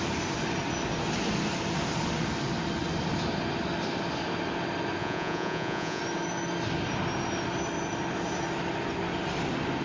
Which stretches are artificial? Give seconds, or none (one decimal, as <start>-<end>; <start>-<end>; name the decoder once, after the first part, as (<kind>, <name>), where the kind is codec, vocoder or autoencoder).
5.0-6.0 (vocoder, Vocos)